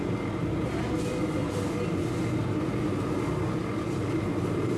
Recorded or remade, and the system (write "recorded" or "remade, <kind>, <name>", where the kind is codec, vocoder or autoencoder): recorded